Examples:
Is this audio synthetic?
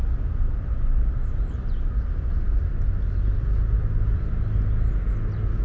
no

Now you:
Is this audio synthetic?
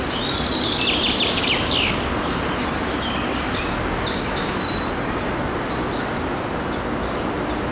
no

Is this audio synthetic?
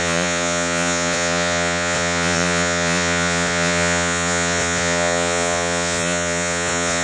yes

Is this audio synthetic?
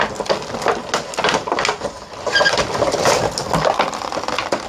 no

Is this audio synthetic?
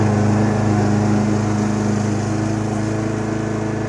no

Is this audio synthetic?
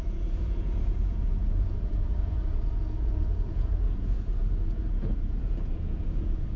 yes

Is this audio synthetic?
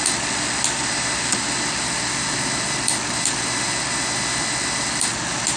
no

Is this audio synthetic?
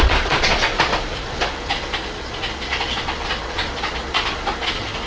yes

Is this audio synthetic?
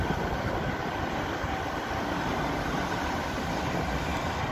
no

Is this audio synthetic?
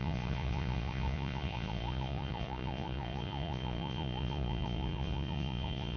yes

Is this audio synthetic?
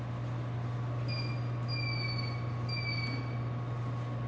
no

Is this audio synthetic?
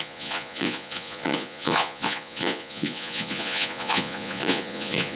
yes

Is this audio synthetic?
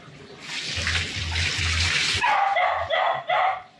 no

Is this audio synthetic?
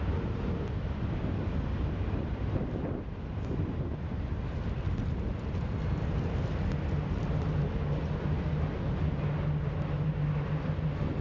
no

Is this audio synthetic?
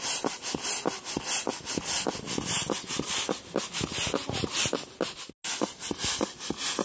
no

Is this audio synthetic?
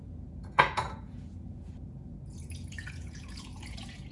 yes